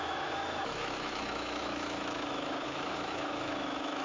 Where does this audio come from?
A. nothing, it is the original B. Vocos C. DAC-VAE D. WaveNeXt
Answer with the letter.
C